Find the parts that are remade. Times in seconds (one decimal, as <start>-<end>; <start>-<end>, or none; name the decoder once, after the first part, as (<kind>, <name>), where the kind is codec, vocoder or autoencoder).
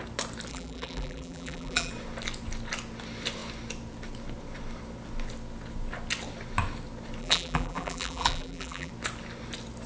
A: 0.5-1.9 (vocoder, BigVGAN v2); 7.2-8.9